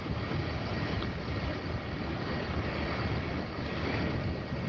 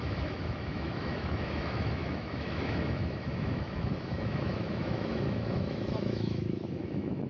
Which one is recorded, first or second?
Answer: first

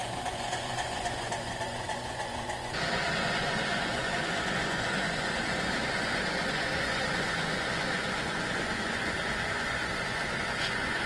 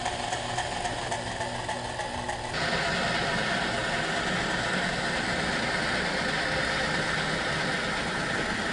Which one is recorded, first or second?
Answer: second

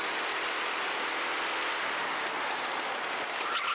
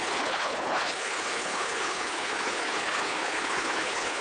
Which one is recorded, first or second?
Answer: first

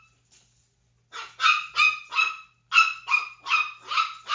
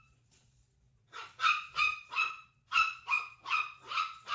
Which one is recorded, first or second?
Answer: first